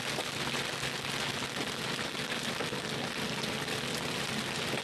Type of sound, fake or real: real